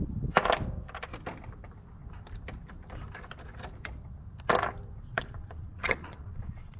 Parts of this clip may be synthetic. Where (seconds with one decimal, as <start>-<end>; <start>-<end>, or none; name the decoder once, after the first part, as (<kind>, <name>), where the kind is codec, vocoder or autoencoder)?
5.1-6.8 (vocoder, Vocos)